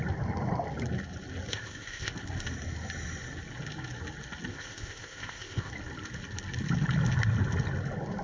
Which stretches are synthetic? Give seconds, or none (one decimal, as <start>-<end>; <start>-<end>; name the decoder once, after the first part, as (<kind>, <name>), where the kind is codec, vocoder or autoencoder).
1.5-2.1 (codec, ZipCodec); 4.5-5.7